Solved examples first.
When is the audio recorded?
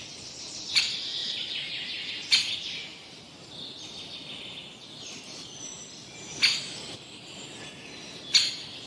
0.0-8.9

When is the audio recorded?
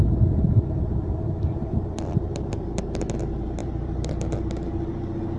3.2-3.6; 4.1-5.4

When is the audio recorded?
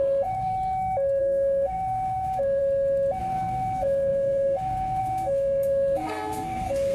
0.5-1.2; 2.6-3.2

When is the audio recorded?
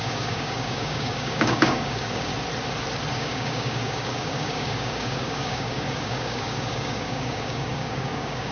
2.3-3.1